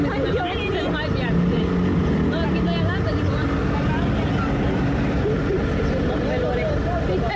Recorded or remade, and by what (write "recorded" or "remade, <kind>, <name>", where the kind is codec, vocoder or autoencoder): recorded